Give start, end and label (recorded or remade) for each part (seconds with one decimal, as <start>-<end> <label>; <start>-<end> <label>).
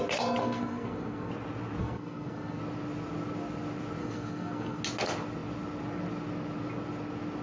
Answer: 0.0-0.4 recorded; 0.4-1.3 remade; 1.3-1.8 recorded; 1.8-2.6 remade; 2.6-4.0 recorded; 4.0-4.8 remade; 4.8-7.4 recorded